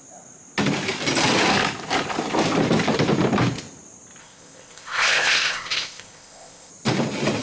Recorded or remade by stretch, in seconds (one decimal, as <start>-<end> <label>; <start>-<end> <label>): 0.0-4.2 recorded; 4.2-6.7 remade; 6.7-7.4 recorded